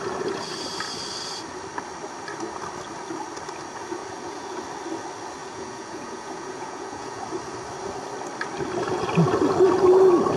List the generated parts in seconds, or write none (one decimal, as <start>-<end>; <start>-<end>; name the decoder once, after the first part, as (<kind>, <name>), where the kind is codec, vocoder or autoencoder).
4.0-4.6 (vocoder, Vocos); 5.4-7.2